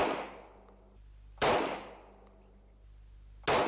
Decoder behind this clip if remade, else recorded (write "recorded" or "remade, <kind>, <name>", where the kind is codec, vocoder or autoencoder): recorded